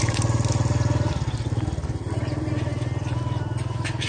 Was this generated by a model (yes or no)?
no